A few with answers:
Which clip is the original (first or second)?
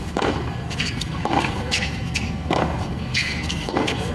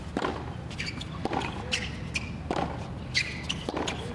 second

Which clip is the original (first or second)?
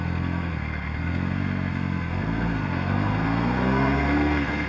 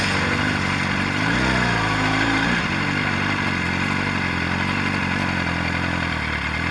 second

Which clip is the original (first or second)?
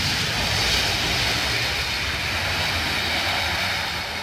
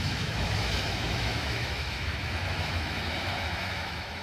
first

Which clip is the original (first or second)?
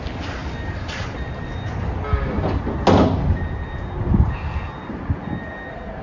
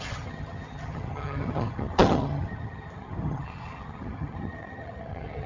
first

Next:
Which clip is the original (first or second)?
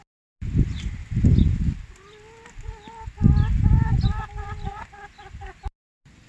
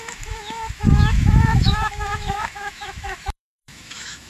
first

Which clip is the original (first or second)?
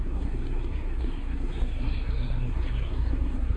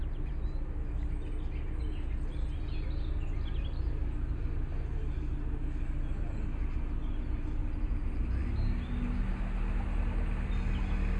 second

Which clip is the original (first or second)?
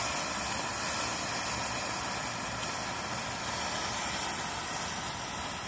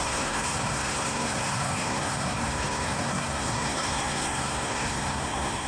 first